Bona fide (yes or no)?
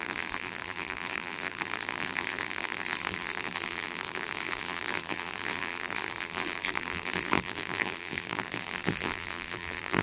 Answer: no